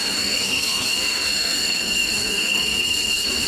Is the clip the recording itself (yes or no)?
no